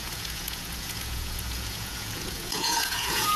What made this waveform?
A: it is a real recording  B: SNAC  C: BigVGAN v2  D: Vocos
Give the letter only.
D